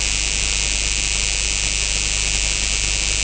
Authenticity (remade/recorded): recorded